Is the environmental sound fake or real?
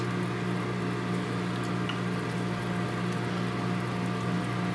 real